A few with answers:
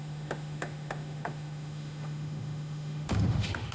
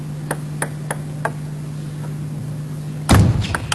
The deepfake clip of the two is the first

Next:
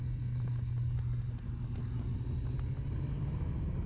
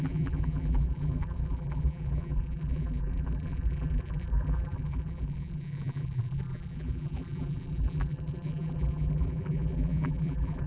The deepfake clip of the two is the second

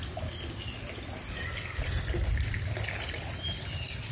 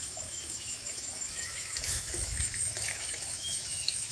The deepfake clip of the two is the second